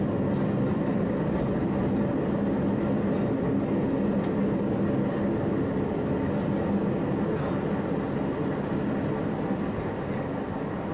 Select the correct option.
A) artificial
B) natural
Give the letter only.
B